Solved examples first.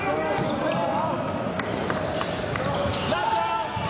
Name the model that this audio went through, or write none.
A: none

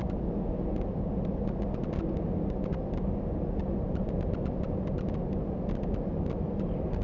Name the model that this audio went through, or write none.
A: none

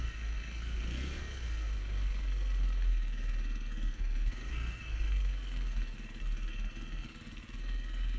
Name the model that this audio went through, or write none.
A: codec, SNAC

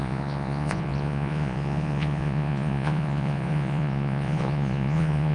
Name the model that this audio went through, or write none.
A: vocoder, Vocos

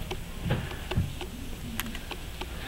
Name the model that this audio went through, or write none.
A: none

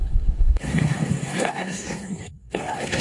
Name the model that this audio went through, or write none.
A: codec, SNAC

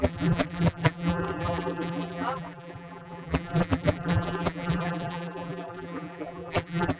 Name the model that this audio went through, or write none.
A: vocoder, BigVGAN v2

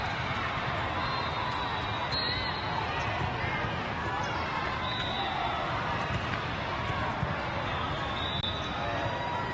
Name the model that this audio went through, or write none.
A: none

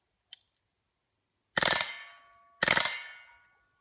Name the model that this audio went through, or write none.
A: none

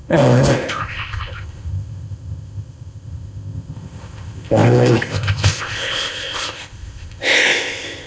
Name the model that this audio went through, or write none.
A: codec, ZipCodec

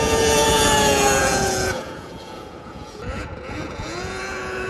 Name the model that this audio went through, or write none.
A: vocoder, Vocos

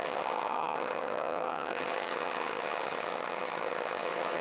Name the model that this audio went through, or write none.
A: vocoder, HiFi-GAN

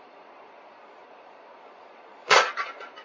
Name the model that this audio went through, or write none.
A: vocoder, Vocos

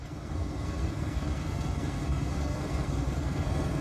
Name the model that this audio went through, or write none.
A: codec, SNAC